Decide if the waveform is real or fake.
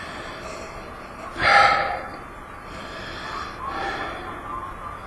real